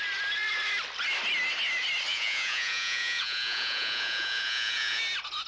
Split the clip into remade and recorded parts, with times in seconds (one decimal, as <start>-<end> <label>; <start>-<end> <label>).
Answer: 0.0-2.1 recorded; 2.1-5.0 remade; 5.0-5.5 recorded